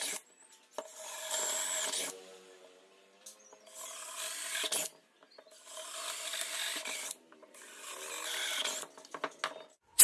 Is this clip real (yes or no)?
yes